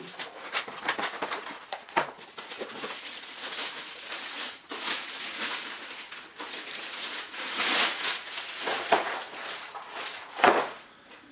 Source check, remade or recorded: remade